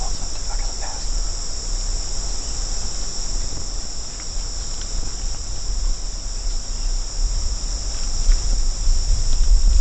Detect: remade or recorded recorded